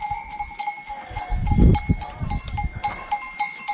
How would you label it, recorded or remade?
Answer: recorded